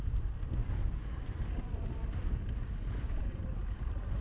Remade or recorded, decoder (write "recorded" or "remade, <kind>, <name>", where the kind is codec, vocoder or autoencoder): recorded